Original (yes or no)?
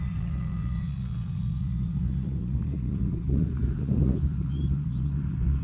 no